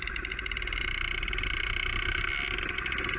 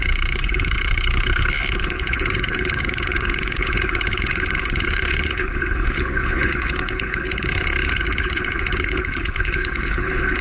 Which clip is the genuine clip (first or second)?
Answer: first